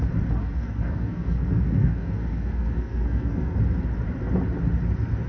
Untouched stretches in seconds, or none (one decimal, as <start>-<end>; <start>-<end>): 0.0-0.4; 3.6-5.3